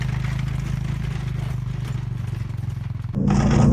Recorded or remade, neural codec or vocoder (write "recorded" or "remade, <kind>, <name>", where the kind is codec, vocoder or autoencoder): recorded